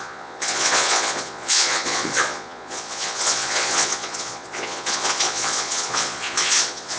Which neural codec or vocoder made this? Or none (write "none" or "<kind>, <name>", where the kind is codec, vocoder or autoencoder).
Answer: vocoder, Vocos